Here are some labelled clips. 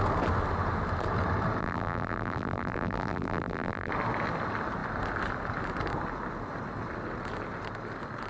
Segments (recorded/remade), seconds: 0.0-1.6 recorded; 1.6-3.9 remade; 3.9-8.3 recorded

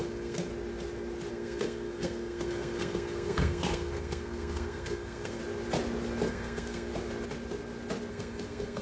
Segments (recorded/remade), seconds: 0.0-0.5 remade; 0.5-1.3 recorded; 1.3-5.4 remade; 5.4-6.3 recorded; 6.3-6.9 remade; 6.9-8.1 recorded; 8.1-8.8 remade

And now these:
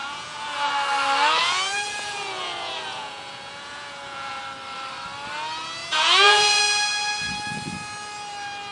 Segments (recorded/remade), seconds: 0.0-0.7 remade; 0.7-1.4 recorded; 1.4-4.4 remade; 4.4-5.8 recorded; 5.8-6.6 remade; 6.6-8.7 recorded

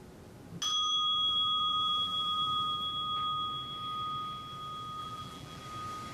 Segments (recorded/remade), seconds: 0.0-0.9 recorded; 0.9-2.9 remade; 2.9-5.0 recorded; 5.0-5.6 remade; 5.6-6.1 recorded